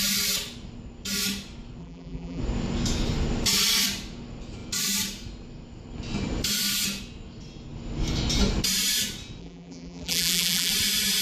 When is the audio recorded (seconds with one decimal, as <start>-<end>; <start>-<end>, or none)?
0.0-1.8; 2.4-9.4; 10.7-11.2